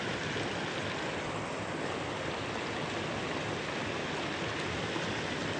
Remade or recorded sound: recorded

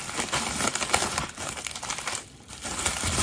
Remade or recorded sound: recorded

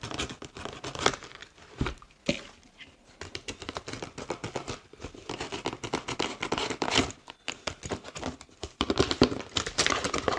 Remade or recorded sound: recorded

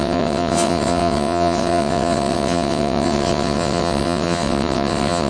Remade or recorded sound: remade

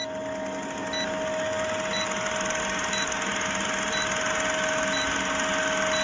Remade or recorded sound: recorded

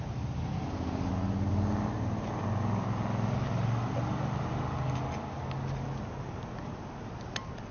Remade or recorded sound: recorded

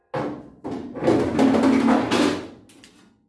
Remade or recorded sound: recorded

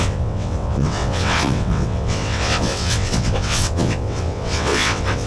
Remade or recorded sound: remade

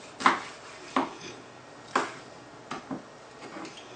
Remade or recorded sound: recorded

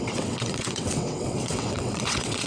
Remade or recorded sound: remade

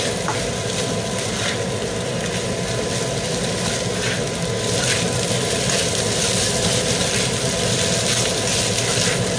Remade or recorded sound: recorded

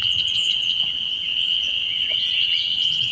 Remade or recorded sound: remade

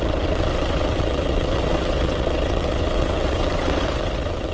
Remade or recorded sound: remade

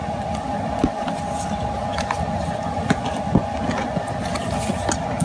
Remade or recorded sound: recorded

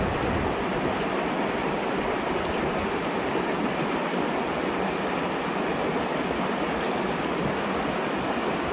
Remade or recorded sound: recorded